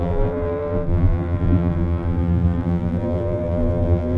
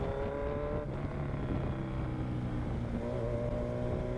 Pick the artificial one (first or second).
first